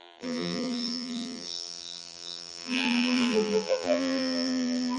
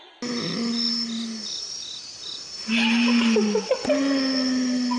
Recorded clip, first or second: second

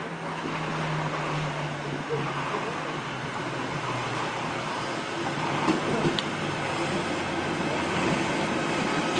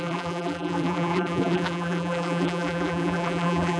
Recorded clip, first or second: first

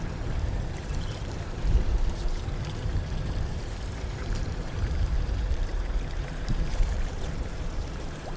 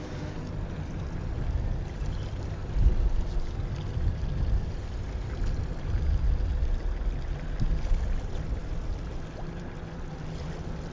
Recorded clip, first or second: second